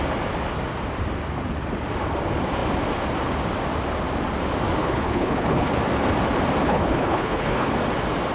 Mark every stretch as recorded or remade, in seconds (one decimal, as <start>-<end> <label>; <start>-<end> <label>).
0.0-4.8 recorded; 4.8-5.7 remade; 5.7-6.6 recorded; 6.6-7.7 remade; 7.7-8.3 recorded